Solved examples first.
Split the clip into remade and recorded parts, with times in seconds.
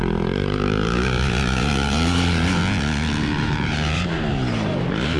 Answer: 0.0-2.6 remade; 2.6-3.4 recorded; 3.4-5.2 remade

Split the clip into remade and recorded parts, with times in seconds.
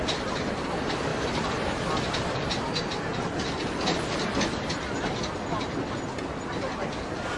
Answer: 0.0-7.4 recorded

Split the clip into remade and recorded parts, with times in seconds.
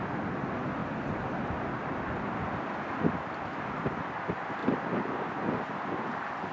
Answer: 0.0-6.5 recorded